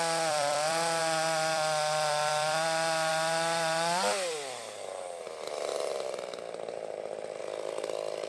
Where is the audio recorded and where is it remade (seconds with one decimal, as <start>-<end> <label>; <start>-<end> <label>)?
0.0-5.7 remade; 5.7-7.4 recorded; 7.4-8.3 remade